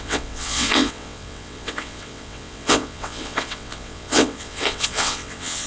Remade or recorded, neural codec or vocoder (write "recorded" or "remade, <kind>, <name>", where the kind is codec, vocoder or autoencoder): remade, vocoder, WaveNeXt